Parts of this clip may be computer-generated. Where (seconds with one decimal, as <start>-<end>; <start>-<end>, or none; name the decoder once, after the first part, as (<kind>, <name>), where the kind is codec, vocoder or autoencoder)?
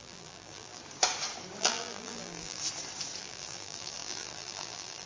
0.0-0.8 (vocoder, BigVGAN v2); 1.6-2.6; 3.2-5.1